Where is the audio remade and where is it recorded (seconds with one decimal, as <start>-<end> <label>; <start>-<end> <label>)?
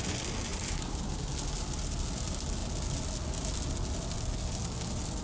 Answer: 0.0-5.2 recorded